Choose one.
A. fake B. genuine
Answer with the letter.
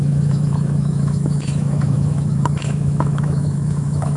A